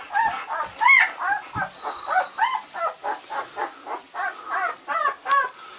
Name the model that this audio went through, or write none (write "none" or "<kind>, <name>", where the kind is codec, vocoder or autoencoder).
none